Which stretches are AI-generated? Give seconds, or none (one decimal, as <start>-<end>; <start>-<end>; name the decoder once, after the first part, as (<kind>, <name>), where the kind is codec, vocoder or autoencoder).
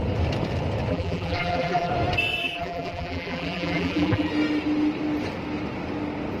0.9-1.9 (vocoder, BigVGAN v2); 2.4-4.3